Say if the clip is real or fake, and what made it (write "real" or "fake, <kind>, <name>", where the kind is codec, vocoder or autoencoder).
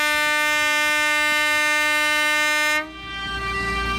real